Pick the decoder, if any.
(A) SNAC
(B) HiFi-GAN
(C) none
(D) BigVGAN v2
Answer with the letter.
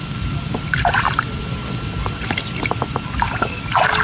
C